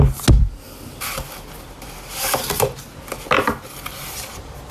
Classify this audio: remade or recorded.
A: recorded